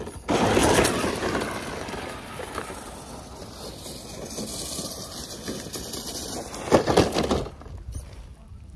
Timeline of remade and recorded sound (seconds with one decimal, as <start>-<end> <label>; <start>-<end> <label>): 0.0-8.8 recorded